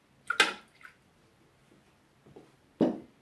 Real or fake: real